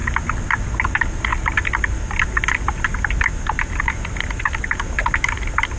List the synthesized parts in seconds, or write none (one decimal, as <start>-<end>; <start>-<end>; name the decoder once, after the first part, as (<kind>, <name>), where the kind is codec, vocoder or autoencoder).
none